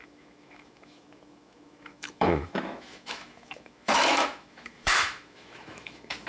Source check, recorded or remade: remade